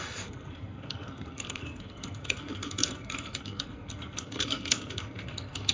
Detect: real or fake fake